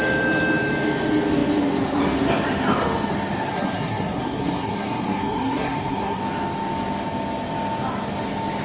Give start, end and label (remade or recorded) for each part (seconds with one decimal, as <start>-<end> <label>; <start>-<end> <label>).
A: 0.0-3.5 recorded; 3.5-6.2 remade; 6.2-8.6 recorded